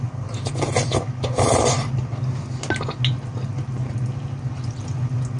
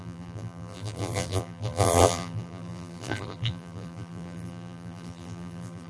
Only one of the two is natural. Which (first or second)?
first